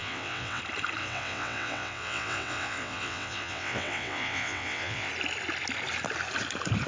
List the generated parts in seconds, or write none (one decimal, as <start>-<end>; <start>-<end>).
0.0-0.6; 1.0-5.1